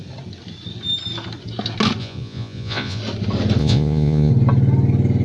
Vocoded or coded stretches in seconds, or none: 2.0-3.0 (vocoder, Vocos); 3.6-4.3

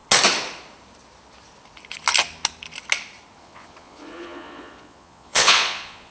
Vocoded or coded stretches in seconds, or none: 3.4-6.1 (vocoder, Vocos)

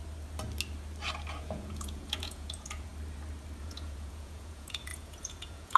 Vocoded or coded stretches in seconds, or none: 1.4-2.9 (vocoder, Vocos); 3.6-5.8

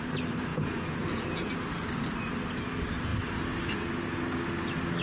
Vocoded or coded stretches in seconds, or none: 0.5-1.5 (vocoder, Vocos)

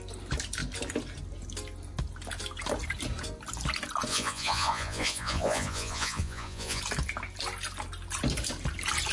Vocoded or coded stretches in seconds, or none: 4.1-6.8 (vocoder, Vocos)